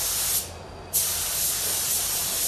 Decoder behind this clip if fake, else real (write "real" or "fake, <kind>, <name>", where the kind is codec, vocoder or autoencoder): real